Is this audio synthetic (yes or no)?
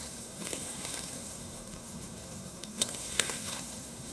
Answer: yes